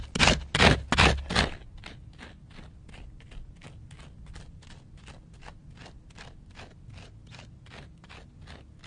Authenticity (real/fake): real